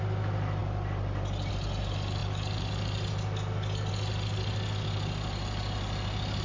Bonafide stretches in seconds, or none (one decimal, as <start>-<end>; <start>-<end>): 0.0-6.4